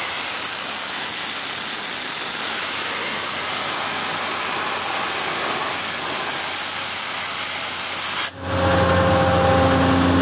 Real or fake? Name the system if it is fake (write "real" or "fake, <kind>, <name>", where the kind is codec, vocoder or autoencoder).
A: real